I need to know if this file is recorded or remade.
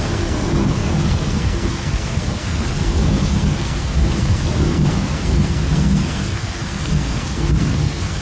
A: remade